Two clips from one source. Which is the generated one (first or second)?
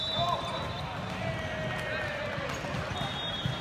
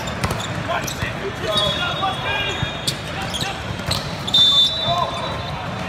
second